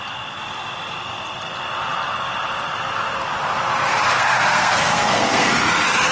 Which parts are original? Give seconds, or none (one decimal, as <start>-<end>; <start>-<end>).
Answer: 0.0-3.9; 5.5-6.1